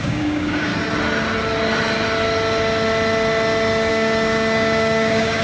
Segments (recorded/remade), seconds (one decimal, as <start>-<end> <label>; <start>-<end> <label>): 0.0-0.7 remade; 0.7-3.9 recorded; 3.9-5.4 remade